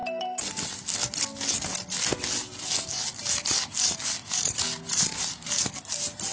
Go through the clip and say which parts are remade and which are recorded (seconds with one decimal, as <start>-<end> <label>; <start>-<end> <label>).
0.0-6.3 recorded